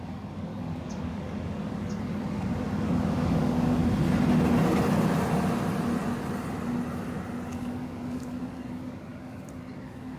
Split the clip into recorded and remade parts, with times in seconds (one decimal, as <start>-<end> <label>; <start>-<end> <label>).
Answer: 0.0-3.8 remade; 3.8-7.5 recorded; 7.5-10.2 remade